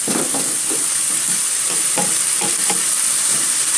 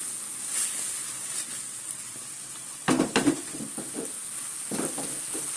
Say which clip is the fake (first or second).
first